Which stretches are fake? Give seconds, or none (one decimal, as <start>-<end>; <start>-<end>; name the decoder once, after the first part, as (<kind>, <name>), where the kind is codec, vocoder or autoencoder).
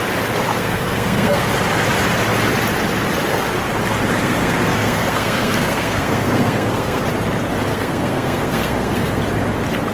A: 0.5-1.5 (codec, SNAC); 4.2-7.0; 7.7-9.2